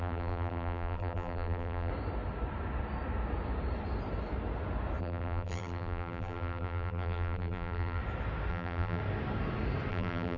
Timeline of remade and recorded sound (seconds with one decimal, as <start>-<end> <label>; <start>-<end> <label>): 0.0-1.9 remade; 1.9-5.0 recorded; 5.0-8.0 remade; 8.0-8.5 recorded; 8.5-9.0 remade; 9.0-9.9 recorded; 9.9-10.4 remade